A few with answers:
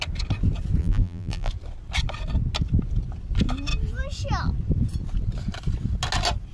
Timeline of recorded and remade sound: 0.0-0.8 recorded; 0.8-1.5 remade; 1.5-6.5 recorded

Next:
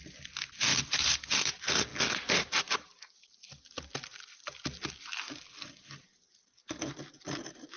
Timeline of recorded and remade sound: 0.0-0.7 recorded; 0.7-1.5 remade; 1.5-7.8 recorded

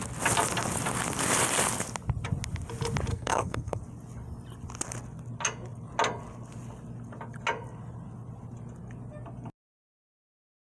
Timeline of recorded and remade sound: 0.0-3.1 recorded; 3.1-3.8 remade; 3.8-10.6 recorded

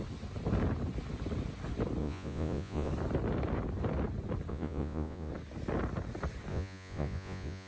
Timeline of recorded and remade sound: 0.0-2.0 recorded; 2.0-2.9 remade; 2.9-4.5 recorded; 4.5-5.3 remade; 5.3-6.5 recorded; 6.5-7.7 remade

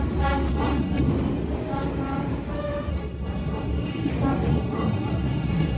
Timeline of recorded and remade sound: 0.0-0.5 recorded; 0.5-1.1 remade; 1.1-2.9 recorded; 2.9-4.1 remade; 4.1-4.5 recorded; 4.5-5.8 remade

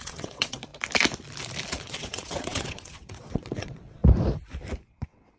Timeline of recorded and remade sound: 0.0-0.7 remade; 0.7-1.8 recorded; 1.8-4.0 remade; 4.0-4.9 recorded; 4.9-5.4 remade

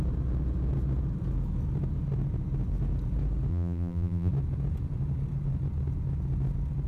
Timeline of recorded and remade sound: 0.0-3.5 recorded; 3.5-4.3 remade; 4.3-6.9 recorded